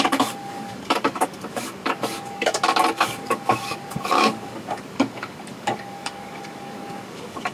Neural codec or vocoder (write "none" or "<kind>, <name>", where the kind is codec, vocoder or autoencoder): codec, DAC